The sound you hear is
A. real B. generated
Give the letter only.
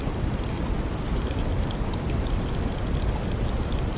A